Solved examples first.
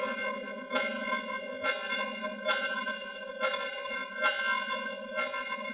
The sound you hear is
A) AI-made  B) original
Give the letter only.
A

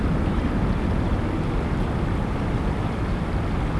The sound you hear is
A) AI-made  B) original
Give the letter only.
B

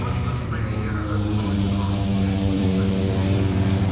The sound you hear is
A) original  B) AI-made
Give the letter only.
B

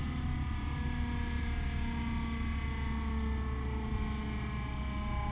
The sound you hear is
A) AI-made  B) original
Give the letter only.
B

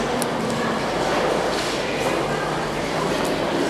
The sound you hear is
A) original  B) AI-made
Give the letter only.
A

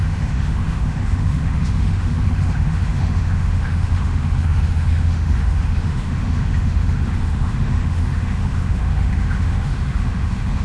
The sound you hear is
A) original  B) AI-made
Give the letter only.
B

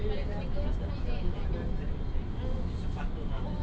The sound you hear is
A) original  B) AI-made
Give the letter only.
A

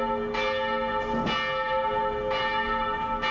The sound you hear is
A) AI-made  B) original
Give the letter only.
B